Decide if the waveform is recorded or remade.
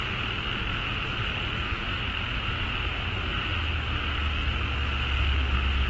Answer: recorded